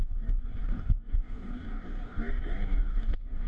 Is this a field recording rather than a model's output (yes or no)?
no